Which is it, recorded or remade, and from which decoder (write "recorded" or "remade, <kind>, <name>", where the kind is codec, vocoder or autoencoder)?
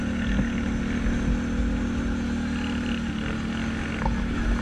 recorded